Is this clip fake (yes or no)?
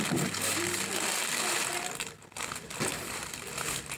no